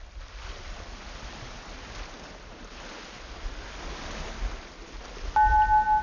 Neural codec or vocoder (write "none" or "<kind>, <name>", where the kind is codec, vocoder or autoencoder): none